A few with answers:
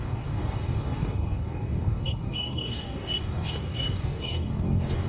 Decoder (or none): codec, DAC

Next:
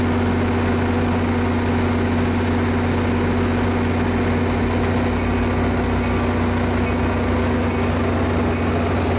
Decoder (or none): none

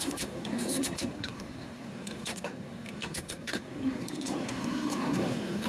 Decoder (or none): codec, SNAC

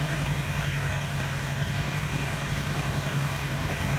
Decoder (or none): codec, DAC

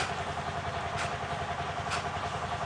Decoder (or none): none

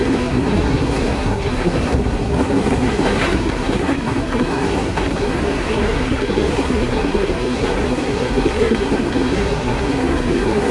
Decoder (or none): codec, SNAC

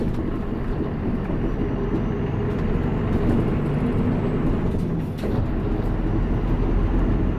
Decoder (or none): none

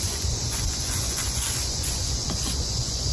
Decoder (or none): vocoder, Vocos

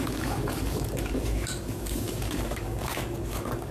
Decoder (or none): codec, DAC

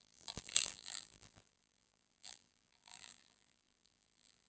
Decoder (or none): vocoder, BigVGAN v2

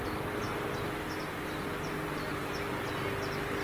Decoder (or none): none